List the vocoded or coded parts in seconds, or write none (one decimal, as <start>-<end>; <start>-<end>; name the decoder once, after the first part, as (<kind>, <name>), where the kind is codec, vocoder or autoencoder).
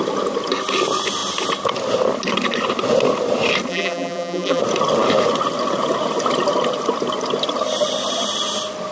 3.7-4.6 (vocoder, BigVGAN v2)